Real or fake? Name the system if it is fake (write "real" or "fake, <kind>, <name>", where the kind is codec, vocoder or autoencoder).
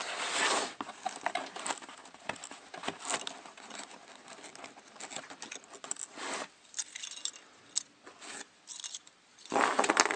real